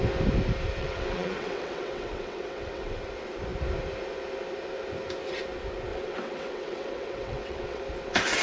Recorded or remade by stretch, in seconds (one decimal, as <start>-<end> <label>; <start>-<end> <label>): 0.0-0.8 recorded; 0.8-3.0 remade; 3.0-5.9 recorded; 5.9-7.8 remade; 7.8-8.4 recorded